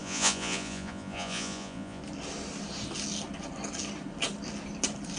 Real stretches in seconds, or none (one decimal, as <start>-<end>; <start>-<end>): 2.0-5.2